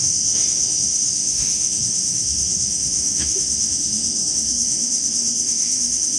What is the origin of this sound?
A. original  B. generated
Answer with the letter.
B